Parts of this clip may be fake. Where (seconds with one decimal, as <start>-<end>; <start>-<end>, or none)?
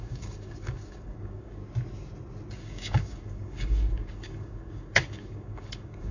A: 0.0-1.6; 2.5-6.1